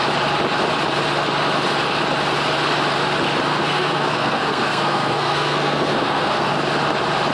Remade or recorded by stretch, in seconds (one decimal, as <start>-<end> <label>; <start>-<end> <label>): 0.0-3.5 recorded; 3.5-6.5 remade; 6.5-7.3 recorded